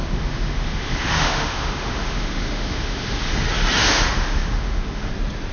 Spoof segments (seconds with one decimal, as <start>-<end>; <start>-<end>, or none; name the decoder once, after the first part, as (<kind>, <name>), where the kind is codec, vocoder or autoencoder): 0.0-3.3 (autoencoder, DAC-VAE); 3.8-5.1